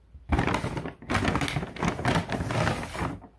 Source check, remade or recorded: recorded